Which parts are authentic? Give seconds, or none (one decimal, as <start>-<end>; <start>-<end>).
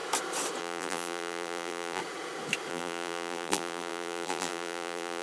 0.0-0.6; 2.0-2.7